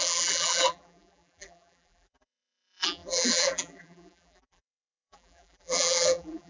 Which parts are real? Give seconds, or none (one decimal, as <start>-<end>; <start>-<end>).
none